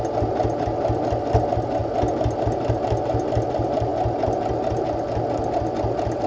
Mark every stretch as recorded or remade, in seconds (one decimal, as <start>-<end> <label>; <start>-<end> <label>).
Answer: 0.0-6.3 recorded